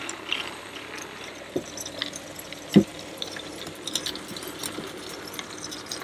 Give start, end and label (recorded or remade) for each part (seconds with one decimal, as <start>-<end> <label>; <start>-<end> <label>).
0.0-6.0 recorded